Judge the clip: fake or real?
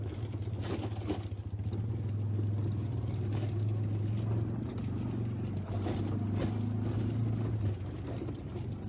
real